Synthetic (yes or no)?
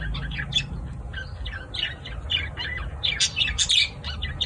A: no